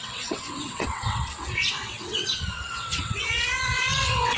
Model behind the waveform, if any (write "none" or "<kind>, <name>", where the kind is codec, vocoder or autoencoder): vocoder, WaveNeXt